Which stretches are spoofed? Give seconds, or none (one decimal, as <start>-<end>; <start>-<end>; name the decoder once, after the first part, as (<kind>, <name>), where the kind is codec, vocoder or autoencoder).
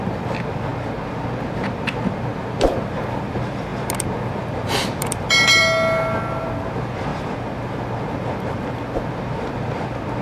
none